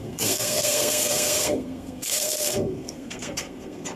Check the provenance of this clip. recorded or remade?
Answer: remade